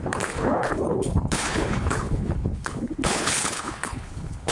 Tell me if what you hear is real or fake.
fake